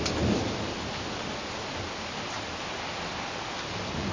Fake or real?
real